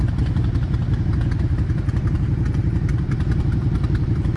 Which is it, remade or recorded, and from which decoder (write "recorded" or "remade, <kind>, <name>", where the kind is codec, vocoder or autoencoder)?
recorded